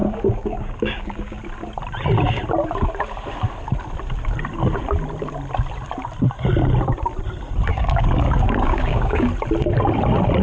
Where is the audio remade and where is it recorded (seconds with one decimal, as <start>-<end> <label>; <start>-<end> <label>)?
0.0-1.4 remade; 1.4-7.7 recorded; 7.7-9.3 remade; 9.3-10.4 recorded